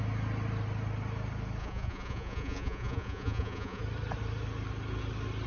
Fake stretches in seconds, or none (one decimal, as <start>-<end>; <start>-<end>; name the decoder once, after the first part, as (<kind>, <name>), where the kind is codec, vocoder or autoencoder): 1.6-3.8 (vocoder, Vocos)